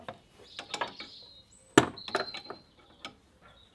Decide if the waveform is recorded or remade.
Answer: recorded